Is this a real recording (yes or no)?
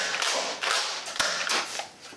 yes